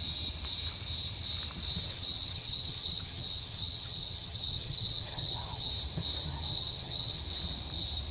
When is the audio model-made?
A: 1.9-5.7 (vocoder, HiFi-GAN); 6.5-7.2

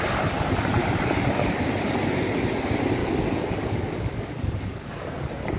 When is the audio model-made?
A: 0.8-1.4 (codec, DAC); 3.0-5.6

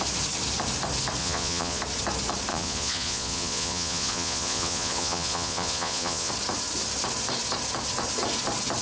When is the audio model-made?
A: 1.2-1.8 (vocoder, Vocos); 2.5-6.3

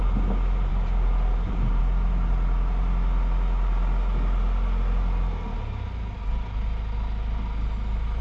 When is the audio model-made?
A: 0.7-1.8 (vocoder, BigVGAN v2)

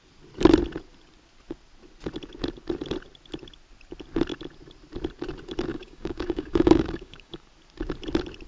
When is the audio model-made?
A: 5.7-7.4 (codec, DAC)

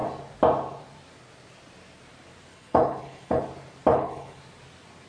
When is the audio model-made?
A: 2.5-3.4 (codec, HILCodec); 3.9-4.4